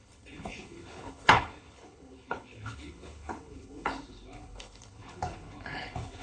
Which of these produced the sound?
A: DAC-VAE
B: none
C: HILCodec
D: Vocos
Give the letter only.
C